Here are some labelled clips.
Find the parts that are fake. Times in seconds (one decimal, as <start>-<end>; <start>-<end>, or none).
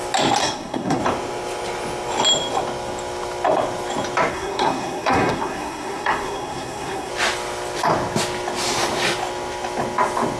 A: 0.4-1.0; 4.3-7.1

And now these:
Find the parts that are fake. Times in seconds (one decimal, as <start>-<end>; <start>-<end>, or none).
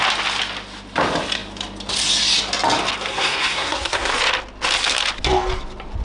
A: 3.1-4.1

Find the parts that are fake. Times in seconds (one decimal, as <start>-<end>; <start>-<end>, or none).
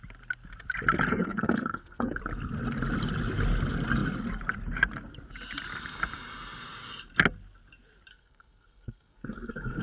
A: 1.1-2.2; 8.1-9.8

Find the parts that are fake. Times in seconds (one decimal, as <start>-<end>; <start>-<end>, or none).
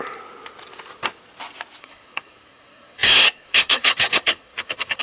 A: 1.8-5.0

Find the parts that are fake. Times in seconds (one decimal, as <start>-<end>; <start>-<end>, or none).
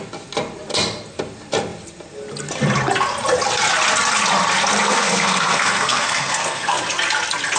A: 4.9-6.8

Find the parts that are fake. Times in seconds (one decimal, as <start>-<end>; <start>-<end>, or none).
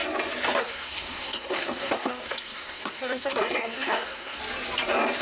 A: 0.6-4.4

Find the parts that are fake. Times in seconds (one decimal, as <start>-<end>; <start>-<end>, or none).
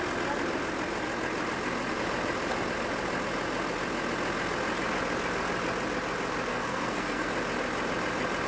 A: 6.5-7.3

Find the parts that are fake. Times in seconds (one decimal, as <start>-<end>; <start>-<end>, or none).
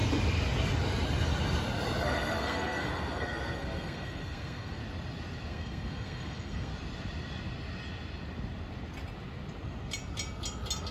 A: 2.0-4.8; 5.5-6.7